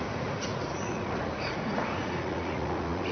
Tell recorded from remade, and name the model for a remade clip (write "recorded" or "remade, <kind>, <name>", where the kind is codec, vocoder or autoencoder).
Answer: remade, vocoder, Vocos